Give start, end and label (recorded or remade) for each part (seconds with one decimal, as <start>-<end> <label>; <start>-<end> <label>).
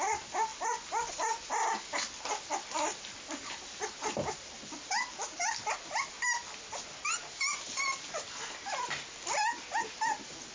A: 0.0-10.5 recorded